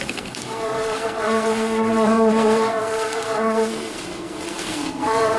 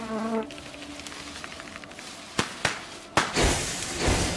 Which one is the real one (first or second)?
second